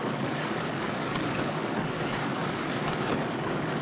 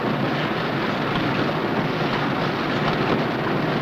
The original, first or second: second